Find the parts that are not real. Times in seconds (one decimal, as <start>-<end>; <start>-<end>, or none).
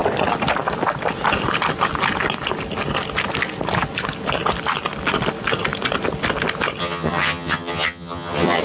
6.8-8.6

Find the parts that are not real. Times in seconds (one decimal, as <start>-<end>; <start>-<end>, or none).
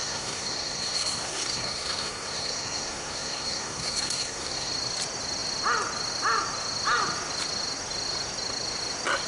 0.0-4.7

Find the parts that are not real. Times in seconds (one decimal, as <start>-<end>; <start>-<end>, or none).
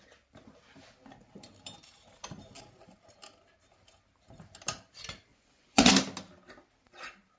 5.3-5.9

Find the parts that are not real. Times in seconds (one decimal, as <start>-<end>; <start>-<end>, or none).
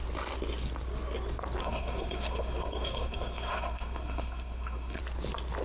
1.6-5.0